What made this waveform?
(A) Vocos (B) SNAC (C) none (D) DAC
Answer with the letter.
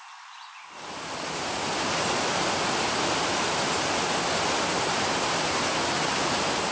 C